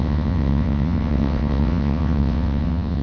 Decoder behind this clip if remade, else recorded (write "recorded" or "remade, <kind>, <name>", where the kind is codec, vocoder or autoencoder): remade, vocoder, WaveNeXt